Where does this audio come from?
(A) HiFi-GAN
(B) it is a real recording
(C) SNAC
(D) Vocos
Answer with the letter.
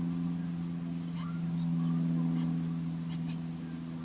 B